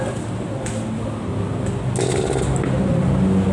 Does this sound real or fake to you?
real